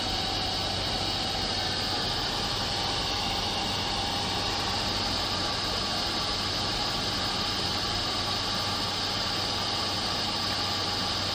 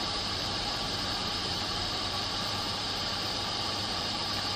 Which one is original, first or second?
first